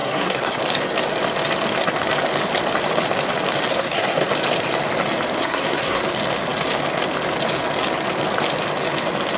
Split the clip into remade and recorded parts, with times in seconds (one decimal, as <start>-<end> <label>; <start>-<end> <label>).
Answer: 0.0-0.6 remade; 0.6-3.7 recorded; 3.7-4.3 remade; 4.3-5.4 recorded; 5.4-6.0 remade; 6.0-9.4 recorded